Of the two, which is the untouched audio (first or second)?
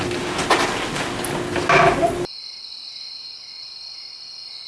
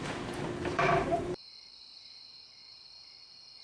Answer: first